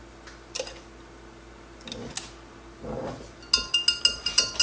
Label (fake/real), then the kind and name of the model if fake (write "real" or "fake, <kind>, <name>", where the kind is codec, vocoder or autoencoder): real